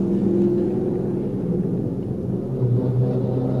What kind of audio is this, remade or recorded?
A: recorded